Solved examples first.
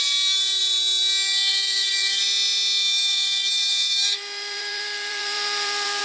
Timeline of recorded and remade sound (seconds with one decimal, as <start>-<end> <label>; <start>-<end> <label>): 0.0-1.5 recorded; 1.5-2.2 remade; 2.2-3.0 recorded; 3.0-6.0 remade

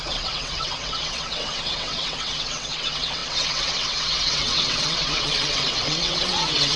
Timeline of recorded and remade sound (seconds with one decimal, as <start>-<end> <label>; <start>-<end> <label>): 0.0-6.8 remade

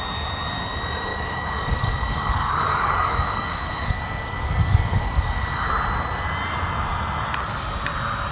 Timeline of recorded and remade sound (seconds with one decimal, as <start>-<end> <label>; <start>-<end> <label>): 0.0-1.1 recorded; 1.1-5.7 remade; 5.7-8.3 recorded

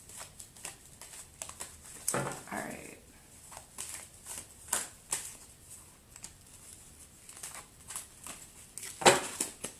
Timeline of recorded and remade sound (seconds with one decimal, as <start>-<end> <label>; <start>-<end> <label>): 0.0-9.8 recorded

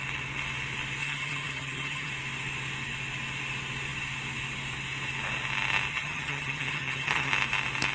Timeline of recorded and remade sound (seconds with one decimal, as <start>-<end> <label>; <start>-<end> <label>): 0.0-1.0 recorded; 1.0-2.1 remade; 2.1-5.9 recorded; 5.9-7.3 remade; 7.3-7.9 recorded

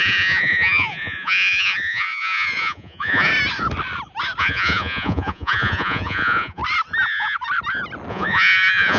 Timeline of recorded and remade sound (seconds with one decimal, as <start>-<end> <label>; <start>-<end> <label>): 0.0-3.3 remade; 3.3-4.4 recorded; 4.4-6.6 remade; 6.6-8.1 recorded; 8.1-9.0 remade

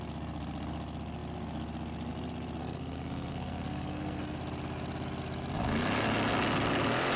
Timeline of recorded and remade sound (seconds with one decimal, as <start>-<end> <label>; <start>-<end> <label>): 0.0-2.6 recorded; 2.6-4.2 remade; 4.2-7.2 recorded

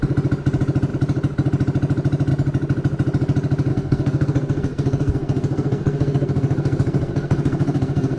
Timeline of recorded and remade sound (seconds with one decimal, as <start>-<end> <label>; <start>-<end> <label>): 0.0-3.7 recorded; 3.7-8.2 remade